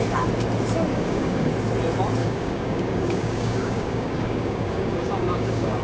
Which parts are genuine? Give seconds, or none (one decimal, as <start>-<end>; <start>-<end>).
0.0-0.9; 1.5-2.2